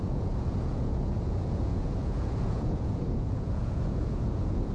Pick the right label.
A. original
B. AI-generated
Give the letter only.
B